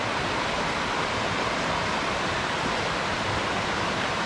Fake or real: real